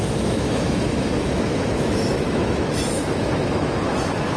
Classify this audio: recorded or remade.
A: remade